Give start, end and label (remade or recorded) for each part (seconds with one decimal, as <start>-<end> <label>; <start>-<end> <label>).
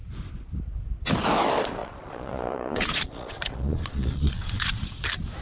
0.0-1.8 recorded; 1.8-5.0 remade; 5.0-5.4 recorded